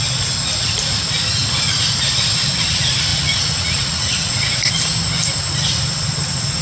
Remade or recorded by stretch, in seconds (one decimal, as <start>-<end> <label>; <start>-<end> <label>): 0.0-3.1 recorded; 3.1-4.7 remade; 4.7-6.6 recorded